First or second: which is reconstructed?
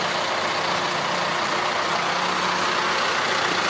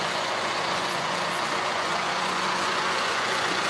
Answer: second